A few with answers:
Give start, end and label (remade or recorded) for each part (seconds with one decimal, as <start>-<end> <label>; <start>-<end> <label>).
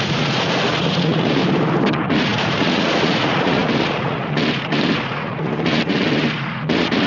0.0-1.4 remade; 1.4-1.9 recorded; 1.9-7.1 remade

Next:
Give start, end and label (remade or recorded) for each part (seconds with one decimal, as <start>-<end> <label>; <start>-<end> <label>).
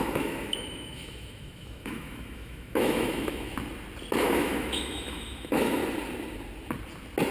0.0-3.5 remade; 3.5-4.2 recorded; 4.2-5.8 remade; 5.8-7.3 recorded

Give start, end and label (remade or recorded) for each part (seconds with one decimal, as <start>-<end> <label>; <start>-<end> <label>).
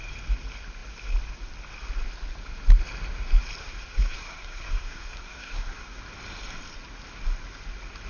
0.0-3.6 recorded; 3.6-6.0 remade; 6.0-8.1 recorded